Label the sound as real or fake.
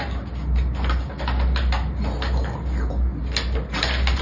real